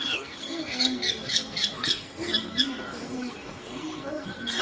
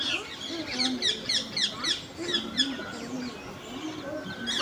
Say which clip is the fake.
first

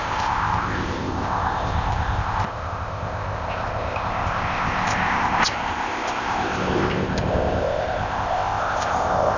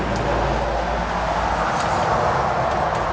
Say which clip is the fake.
first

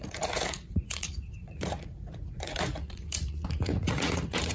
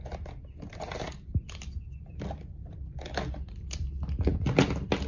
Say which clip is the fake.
first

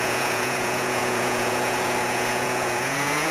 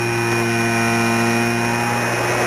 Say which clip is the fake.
first